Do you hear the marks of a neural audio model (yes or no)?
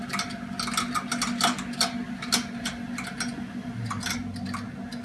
no